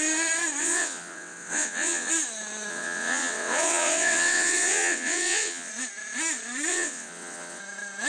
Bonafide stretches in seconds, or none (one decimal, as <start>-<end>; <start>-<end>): 0.0-0.6; 2.1-2.7; 5.7-6.7; 7.6-8.1